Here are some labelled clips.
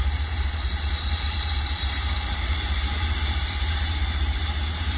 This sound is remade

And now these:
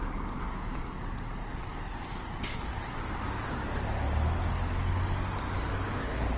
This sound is recorded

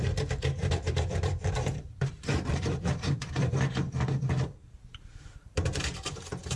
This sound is remade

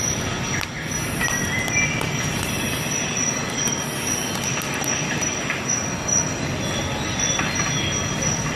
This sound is recorded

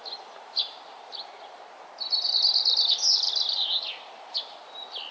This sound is recorded